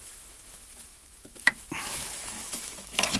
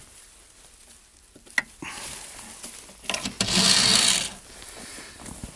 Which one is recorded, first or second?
second